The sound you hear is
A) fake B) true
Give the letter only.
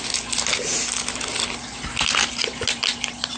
B